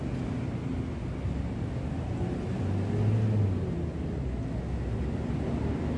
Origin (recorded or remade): recorded